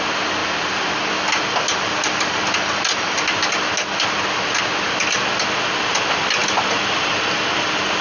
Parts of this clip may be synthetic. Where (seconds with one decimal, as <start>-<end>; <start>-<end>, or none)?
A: none